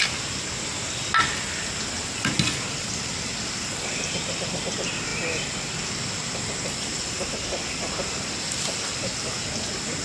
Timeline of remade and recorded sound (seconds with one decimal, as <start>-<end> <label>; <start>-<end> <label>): 0.0-10.0 recorded